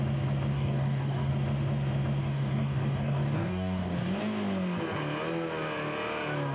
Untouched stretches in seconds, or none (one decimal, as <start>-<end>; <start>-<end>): 0.0-0.5; 1.3-2.2; 4.2-6.5